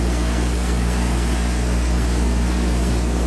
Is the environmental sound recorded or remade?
remade